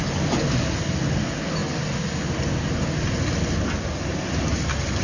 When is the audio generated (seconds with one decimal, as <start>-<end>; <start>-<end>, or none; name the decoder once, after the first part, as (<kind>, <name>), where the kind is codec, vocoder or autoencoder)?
none